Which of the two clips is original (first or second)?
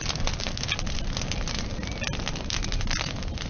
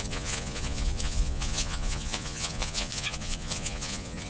first